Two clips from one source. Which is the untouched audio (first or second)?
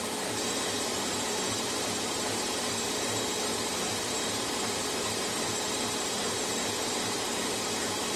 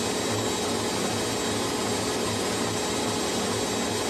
second